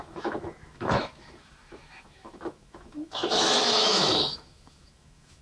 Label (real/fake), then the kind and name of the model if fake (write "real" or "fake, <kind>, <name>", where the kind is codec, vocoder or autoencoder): fake, autoencoder, DAC-VAE